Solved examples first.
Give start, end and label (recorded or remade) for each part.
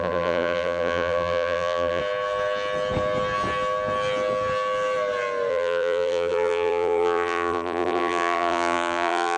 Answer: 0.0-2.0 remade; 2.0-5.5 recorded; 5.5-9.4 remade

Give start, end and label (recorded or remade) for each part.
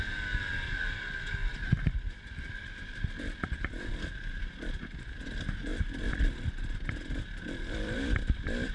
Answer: 0.0-1.4 recorded; 1.4-3.8 remade; 3.8-5.7 recorded; 5.7-8.7 remade